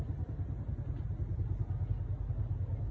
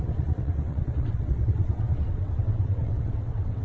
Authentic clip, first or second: first